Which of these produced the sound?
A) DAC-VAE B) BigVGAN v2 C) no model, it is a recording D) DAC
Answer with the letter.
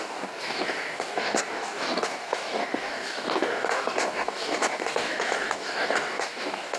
D